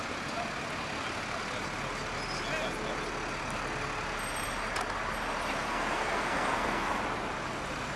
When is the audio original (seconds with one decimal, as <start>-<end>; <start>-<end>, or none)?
0.0-5.6; 7.0-8.0